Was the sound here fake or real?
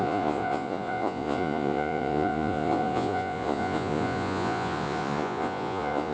fake